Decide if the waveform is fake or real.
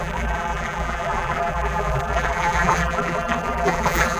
fake